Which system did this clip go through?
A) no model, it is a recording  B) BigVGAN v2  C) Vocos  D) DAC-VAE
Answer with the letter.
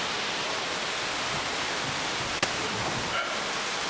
A